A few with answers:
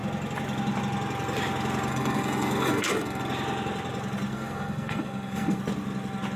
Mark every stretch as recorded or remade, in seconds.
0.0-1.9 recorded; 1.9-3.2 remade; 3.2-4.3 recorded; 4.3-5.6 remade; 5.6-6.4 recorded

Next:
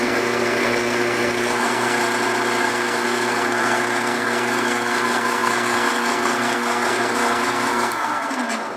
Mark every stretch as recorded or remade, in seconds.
0.0-2.0 remade; 2.0-2.6 recorded; 2.6-8.8 remade

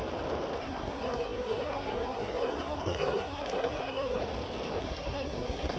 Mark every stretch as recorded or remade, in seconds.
0.0-0.6 recorded; 0.6-4.2 remade; 4.2-4.8 recorded; 4.8-5.8 remade

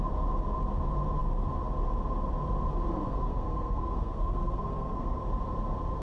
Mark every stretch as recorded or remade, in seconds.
0.0-3.1 recorded; 3.1-5.2 remade; 5.2-6.0 recorded

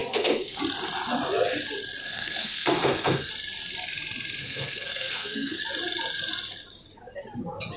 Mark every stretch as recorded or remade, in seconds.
0.0-0.6 remade; 0.6-2.0 recorded; 2.0-3.3 remade; 3.3-4.4 recorded; 4.4-5.6 remade; 5.6-7.8 recorded

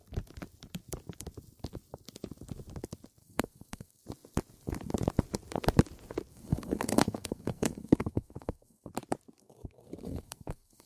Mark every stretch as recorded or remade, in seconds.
0.0-3.2 recorded; 3.2-4.0 remade; 4.0-6.3 recorded; 6.3-8.9 remade; 8.9-9.4 recorded; 9.4-10.9 remade